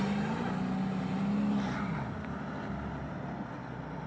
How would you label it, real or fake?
real